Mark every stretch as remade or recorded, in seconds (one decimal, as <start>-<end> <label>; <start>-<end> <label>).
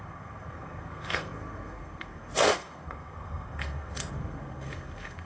0.0-5.3 remade